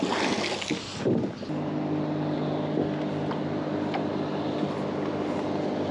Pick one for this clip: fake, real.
real